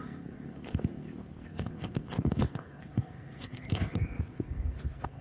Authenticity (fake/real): fake